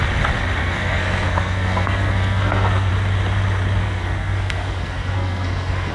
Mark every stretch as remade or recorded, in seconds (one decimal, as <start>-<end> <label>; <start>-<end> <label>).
0.0-0.6 recorded; 0.6-2.9 remade; 2.9-3.8 recorded; 3.8-5.9 remade